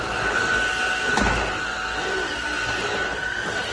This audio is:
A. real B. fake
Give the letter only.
A